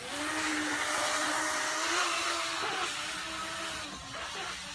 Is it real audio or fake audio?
real